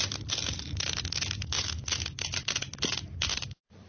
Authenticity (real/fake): real